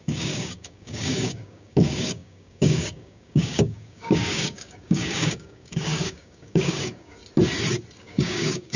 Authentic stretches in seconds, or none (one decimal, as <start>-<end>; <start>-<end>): 7.2-8.0